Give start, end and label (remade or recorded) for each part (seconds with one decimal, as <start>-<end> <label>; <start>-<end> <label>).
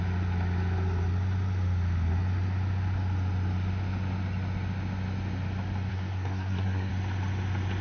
0.0-5.9 recorded; 5.9-6.9 remade; 6.9-7.8 recorded